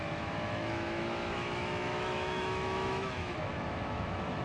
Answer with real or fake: fake